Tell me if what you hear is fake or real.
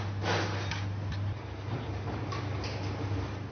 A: real